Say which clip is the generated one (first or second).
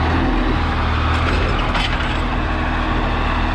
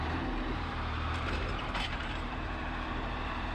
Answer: second